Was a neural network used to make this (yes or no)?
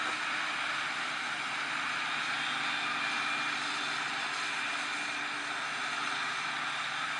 no